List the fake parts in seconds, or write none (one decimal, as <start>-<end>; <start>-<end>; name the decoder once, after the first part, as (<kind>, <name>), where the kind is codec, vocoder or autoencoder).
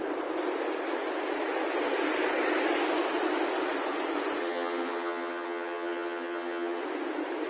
4.4-6.8 (vocoder, HiFi-GAN)